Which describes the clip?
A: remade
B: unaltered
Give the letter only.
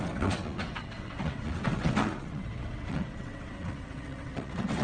A